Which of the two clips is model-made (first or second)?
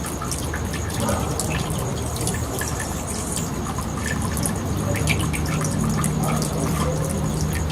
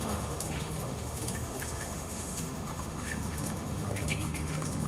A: second